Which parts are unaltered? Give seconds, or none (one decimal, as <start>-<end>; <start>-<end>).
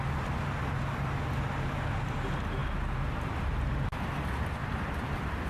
0.0-4.6